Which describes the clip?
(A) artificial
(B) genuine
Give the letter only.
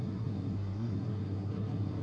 A